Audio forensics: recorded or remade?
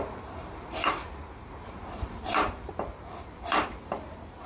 remade